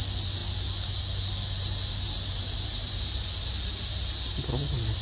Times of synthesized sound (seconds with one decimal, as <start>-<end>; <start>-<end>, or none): none